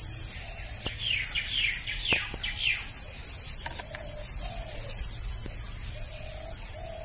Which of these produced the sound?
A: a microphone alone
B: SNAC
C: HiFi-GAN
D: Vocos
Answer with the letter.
A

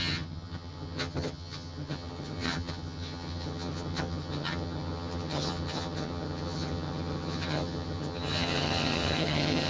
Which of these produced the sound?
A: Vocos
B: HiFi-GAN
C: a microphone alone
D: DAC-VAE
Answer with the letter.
B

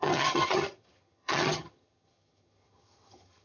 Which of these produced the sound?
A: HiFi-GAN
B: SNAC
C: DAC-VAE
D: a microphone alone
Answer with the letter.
A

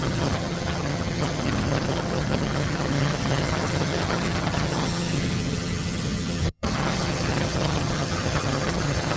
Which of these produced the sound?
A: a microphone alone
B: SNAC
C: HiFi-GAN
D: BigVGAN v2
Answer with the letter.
C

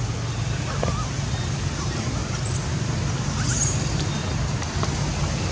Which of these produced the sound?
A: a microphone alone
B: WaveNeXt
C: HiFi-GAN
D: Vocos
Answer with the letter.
A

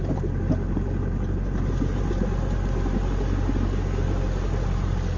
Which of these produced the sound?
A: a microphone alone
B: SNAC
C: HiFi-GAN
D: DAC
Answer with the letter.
A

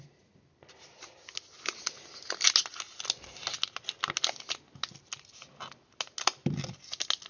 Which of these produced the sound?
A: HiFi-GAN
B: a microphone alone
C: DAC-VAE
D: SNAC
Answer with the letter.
B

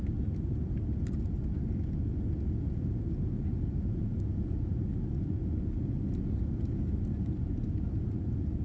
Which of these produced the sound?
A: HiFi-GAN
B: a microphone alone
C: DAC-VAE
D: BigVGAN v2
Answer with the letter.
B